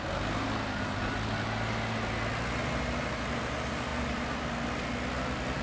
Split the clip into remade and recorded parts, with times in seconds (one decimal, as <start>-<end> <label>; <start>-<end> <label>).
0.0-5.6 recorded